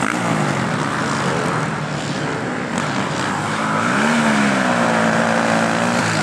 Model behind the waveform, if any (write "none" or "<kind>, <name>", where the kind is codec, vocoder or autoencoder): none